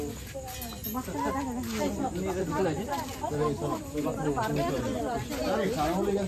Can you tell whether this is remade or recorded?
recorded